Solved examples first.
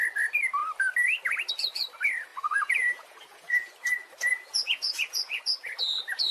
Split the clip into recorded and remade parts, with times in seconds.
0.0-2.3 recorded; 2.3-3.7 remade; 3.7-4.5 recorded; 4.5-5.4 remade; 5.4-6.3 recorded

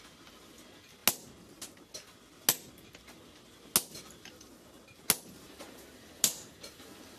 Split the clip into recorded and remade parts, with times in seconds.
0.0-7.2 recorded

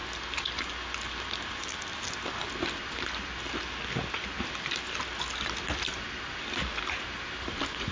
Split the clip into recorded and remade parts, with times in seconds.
0.0-7.9 recorded